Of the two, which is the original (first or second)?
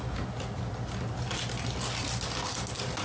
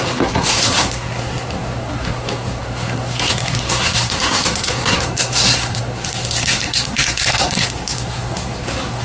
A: first